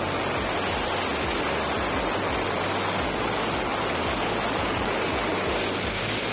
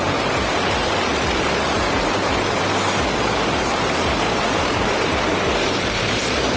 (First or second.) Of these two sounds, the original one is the first